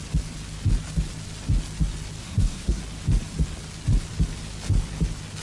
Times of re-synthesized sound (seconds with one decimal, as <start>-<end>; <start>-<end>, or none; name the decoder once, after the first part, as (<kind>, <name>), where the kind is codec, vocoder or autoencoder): 2.2-2.8 (codec, SNAC)